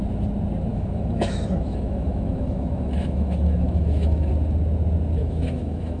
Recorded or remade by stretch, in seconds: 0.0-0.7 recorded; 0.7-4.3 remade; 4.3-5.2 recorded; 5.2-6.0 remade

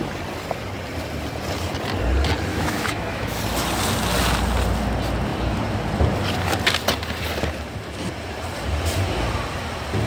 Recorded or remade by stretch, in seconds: 0.0-2.5 recorded; 2.5-3.4 remade; 3.4-10.1 recorded

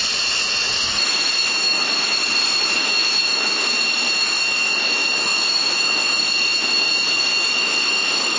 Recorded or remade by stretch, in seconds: 0.0-0.7 recorded; 0.7-2.2 remade; 2.2-2.8 recorded; 2.8-8.4 remade

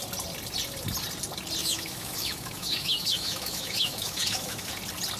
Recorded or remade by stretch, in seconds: 0.0-1.6 recorded; 1.6-4.7 remade; 4.7-5.2 recorded

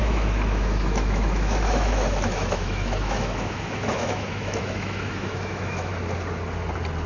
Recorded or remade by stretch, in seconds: 0.0-5.9 remade; 5.9-7.1 recorded

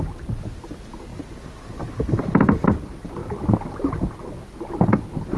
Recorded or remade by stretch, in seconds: 0.0-5.4 recorded

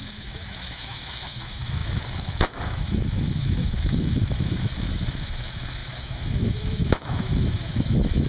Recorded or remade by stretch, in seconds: 0.0-8.3 remade

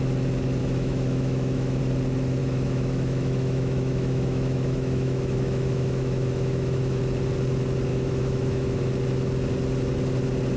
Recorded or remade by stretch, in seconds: 0.0-0.6 recorded; 0.6-1.8 remade; 1.8-2.4 recorded; 2.4-7.0 remade; 7.0-7.9 recorded; 7.9-8.8 remade; 8.8-10.6 recorded